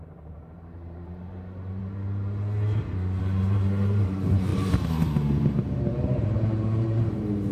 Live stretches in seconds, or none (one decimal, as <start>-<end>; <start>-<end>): 1.8-3.2